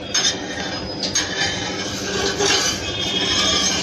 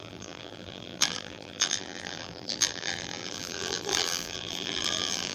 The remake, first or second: second